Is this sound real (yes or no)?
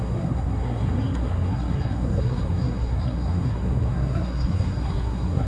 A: no